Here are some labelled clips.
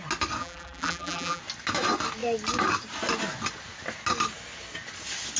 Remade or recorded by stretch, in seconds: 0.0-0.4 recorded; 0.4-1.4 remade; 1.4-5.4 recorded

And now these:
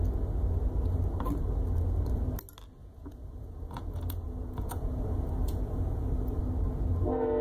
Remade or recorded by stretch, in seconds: 0.0-2.8 recorded; 2.8-6.4 remade; 6.4-7.4 recorded

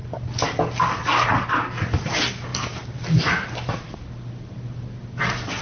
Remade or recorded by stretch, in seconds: 0.0-5.6 recorded

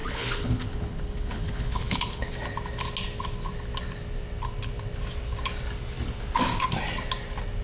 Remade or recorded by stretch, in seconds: 0.0-2.3 remade; 2.3-7.6 recorded

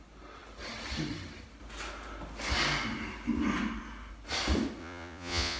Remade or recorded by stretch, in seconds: 0.0-4.8 recorded; 4.8-5.6 remade

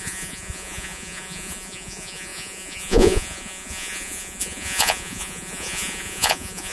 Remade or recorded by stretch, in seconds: 0.0-6.7 remade

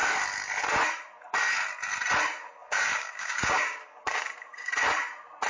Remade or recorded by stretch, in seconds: 0.0-2.6 recorded; 2.6-4.7 remade; 4.7-5.5 recorded

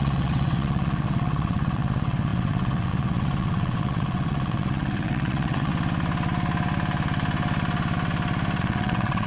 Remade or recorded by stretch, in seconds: 0.0-5.7 remade; 5.7-8.6 recorded; 8.6-9.3 remade